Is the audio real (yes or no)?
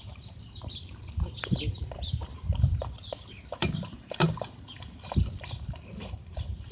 no